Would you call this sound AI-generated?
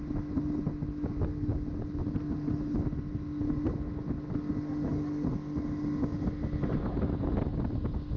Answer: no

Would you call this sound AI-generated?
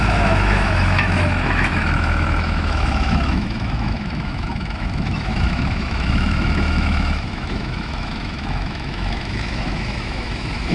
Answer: yes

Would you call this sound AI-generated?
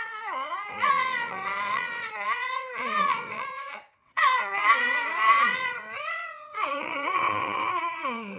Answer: yes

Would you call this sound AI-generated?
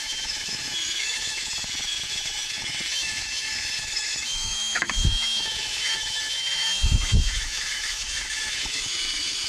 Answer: yes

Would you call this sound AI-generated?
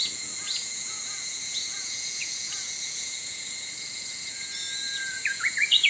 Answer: yes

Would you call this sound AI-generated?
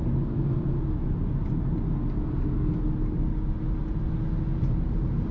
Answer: no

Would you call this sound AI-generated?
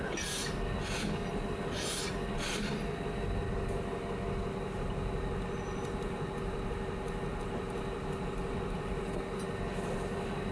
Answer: no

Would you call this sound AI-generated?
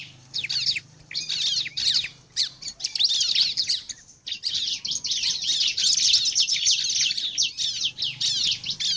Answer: no